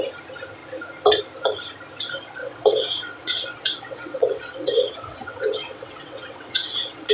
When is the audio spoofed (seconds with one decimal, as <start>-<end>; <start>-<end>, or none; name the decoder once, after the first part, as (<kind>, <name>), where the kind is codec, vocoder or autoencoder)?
2.4-7.1 (vocoder, WaveNeXt)